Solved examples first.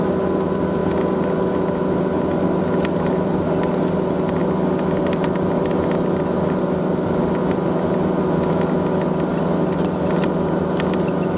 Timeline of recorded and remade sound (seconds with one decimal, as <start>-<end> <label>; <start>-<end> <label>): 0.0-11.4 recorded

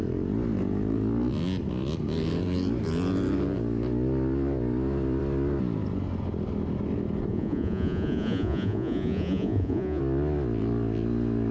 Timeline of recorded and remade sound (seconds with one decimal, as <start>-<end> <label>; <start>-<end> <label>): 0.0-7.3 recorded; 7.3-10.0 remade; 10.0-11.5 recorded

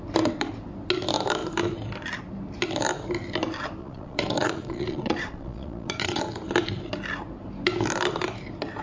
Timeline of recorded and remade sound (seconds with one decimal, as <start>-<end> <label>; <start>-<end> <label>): 0.0-3.8 recorded; 3.8-6.2 remade; 6.2-8.8 recorded

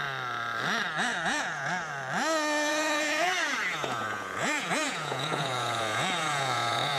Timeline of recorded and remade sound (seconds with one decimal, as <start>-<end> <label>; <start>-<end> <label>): 0.0-1.1 recorded; 1.1-1.9 remade; 1.9-2.7 recorded; 2.7-7.0 remade